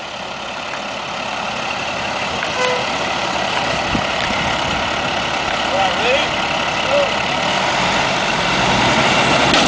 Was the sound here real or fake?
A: real